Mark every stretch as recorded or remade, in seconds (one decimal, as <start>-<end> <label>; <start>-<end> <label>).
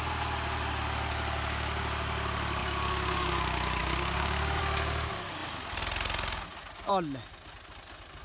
0.0-2.6 recorded; 2.6-3.4 remade; 3.4-3.8 recorded; 3.8-4.6 remade; 4.6-8.2 recorded